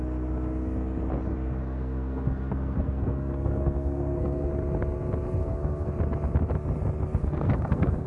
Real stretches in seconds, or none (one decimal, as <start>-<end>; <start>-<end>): 0.0-1.6; 4.5-5.4; 5.9-7.2